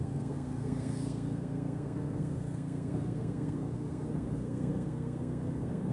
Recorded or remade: remade